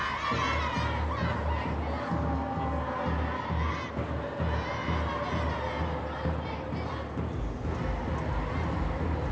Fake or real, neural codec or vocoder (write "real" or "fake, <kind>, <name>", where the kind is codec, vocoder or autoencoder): real